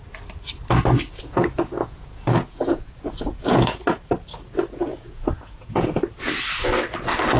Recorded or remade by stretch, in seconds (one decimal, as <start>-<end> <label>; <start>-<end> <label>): 0.0-1.1 recorded; 1.1-3.8 remade; 3.8-4.9 recorded; 4.9-6.3 remade; 6.3-7.4 recorded